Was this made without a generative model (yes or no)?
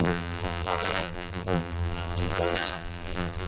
no